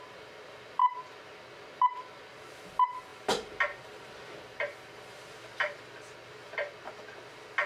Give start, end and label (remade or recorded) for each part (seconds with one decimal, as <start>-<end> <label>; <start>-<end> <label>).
0.0-3.1 recorded; 3.1-5.8 remade; 5.8-7.7 recorded